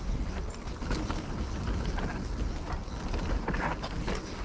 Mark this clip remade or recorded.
recorded